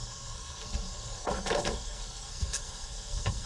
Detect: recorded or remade remade